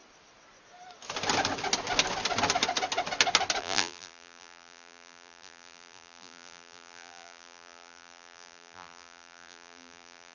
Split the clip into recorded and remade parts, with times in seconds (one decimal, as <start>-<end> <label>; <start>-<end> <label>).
0.0-3.6 recorded; 3.6-10.3 remade